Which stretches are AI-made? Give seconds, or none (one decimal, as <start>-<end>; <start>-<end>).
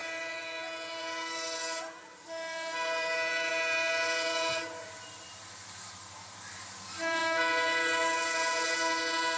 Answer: 0.0-9.4